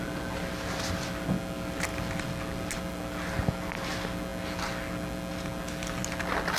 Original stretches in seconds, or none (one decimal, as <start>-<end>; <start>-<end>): 0.0-6.6